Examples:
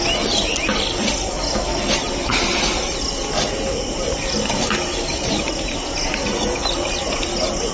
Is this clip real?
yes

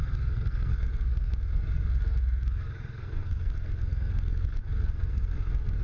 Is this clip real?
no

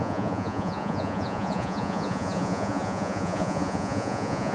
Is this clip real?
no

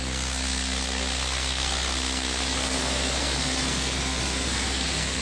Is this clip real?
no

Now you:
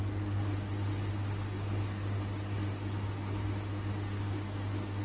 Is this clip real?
yes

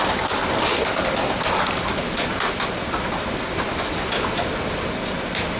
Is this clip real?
yes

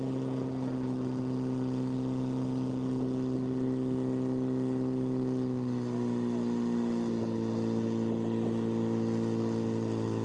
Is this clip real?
yes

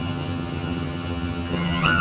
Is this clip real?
no